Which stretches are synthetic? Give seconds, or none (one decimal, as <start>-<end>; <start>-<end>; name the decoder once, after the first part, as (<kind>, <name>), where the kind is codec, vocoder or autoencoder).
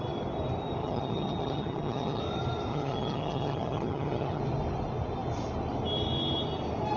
0.8-2.2 (vocoder, HiFi-GAN); 2.7-4.4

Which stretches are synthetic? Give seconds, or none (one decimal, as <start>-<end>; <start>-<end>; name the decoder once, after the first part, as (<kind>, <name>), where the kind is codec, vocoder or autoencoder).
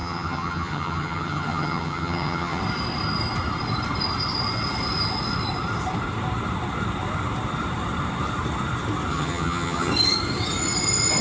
0.0-2.6 (vocoder, HiFi-GAN); 9.1-9.9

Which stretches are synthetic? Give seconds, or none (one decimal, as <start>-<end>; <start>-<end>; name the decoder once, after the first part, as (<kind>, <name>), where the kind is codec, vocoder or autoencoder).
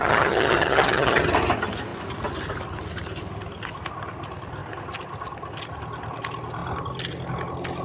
0.0-1.2 (vocoder, HiFi-GAN)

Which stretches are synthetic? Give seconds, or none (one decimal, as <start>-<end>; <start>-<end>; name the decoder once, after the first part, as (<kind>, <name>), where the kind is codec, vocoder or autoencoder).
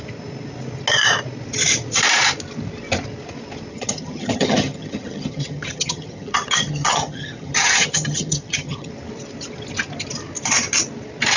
3.7-8.9 (vocoder, HiFi-GAN)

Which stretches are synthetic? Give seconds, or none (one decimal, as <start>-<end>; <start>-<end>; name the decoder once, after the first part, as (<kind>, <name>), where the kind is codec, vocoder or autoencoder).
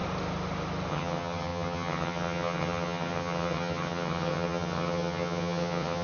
0.9-6.0 (vocoder, HiFi-GAN)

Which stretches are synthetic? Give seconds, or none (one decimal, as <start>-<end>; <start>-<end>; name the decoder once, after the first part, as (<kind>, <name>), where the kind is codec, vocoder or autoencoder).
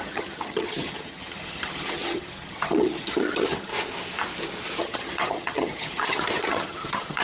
0.0-3.7 (vocoder, HiFi-GAN); 4.8-7.2